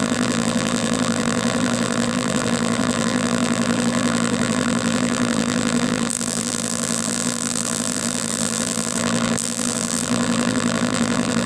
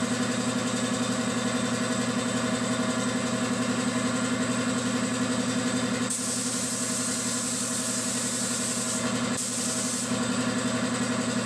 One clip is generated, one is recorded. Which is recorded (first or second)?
second